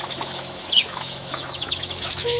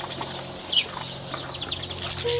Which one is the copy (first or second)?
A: first